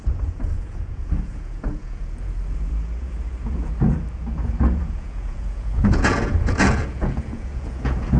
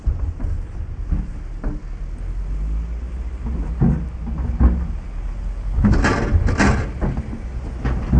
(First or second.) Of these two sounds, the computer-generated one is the first